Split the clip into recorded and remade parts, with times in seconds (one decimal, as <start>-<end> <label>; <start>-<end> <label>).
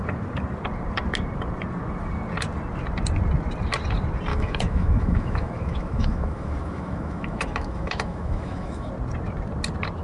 0.0-4.3 recorded; 4.3-8.9 remade; 8.9-10.0 recorded